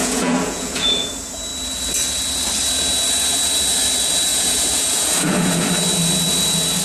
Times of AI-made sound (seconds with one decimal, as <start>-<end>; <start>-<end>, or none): 0.0-1.1; 4.3-5.7